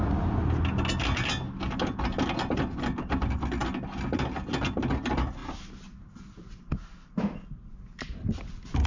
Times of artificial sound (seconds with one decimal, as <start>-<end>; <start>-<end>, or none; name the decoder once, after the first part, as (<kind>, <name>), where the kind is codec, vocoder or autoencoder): none